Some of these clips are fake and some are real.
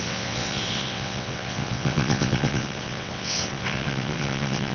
fake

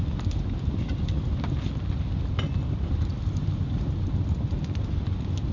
real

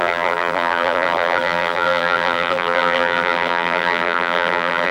fake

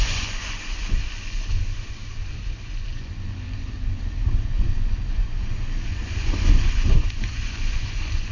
fake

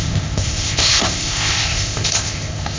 fake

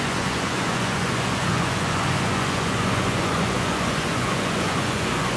fake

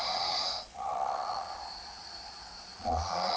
fake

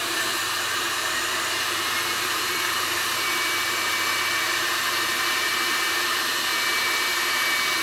fake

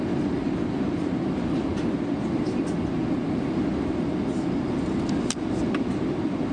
real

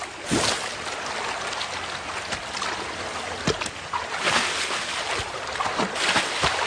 real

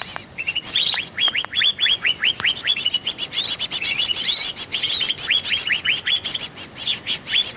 fake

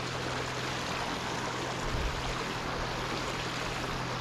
real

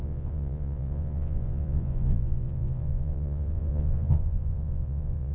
fake